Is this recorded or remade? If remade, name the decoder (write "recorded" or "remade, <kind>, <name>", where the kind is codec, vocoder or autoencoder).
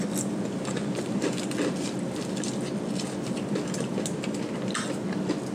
recorded